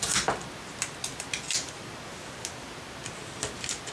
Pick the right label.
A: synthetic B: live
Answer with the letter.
B